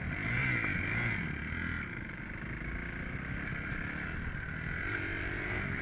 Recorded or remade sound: recorded